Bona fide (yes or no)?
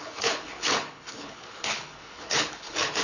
no